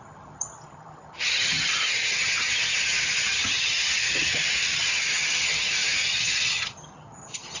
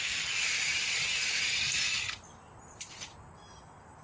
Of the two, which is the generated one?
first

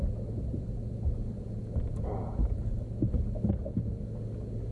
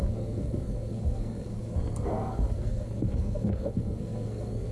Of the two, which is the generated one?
second